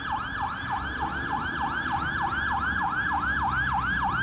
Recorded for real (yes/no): yes